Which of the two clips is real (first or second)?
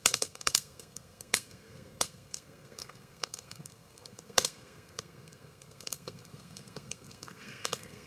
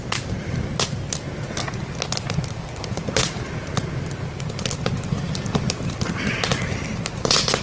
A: second